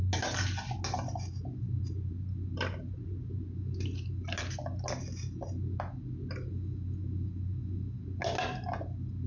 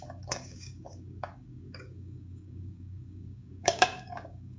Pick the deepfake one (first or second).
second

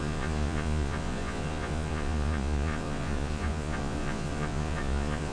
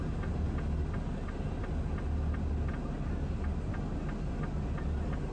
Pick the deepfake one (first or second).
first